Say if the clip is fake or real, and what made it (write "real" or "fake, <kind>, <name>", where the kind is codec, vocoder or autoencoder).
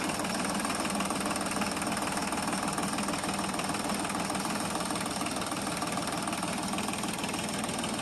fake, vocoder, BigVGAN v2